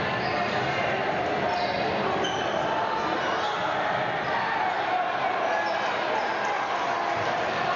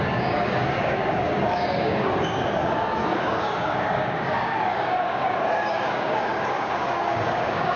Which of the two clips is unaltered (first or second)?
first